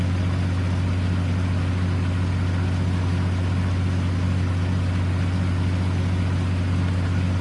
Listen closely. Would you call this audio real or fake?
real